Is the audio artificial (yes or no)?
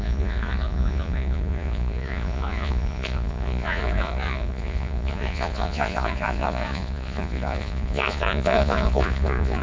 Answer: yes